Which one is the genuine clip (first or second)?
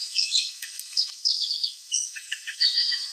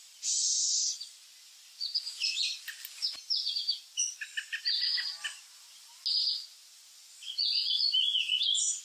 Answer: second